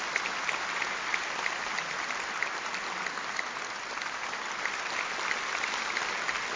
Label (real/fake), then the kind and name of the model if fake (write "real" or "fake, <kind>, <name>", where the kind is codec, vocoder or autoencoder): real